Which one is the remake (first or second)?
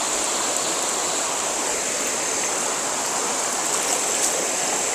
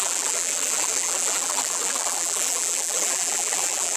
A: second